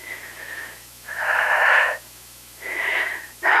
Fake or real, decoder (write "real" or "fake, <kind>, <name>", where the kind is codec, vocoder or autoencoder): fake, autoencoder, DAC-VAE